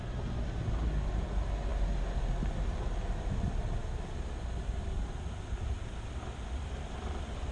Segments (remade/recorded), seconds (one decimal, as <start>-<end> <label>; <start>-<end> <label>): 0.0-7.5 recorded